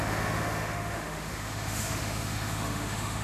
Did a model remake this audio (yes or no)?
yes